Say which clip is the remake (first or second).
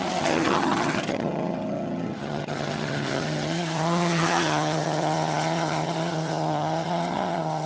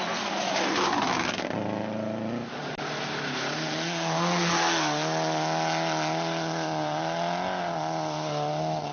first